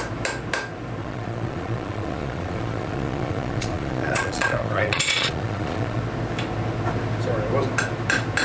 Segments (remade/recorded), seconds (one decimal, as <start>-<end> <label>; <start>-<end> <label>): 0.0-1.0 recorded; 1.0-6.0 remade; 6.0-8.4 recorded